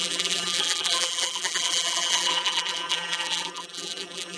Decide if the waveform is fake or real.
fake